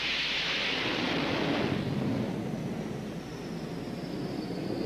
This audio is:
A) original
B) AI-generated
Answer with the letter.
A